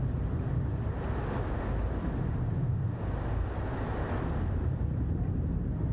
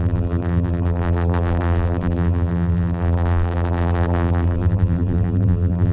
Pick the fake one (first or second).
second